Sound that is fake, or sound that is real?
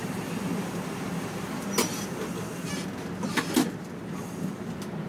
real